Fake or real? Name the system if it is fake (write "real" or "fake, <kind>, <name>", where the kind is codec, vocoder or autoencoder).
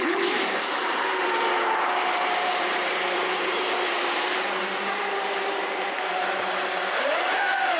fake, vocoder, BigVGAN v2